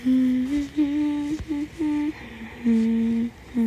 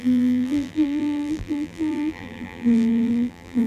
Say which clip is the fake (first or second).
second